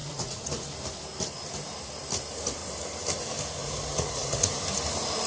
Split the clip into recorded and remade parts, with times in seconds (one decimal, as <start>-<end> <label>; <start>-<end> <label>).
0.0-0.5 remade; 0.5-3.6 recorded; 3.6-4.6 remade; 4.6-5.3 recorded